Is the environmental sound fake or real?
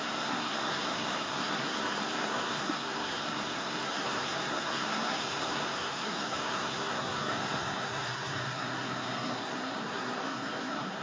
fake